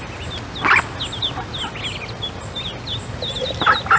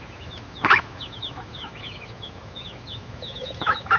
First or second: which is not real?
second